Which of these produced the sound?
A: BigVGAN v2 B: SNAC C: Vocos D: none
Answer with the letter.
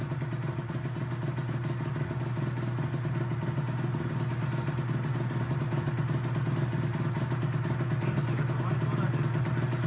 D